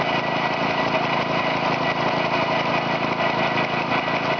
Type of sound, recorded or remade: recorded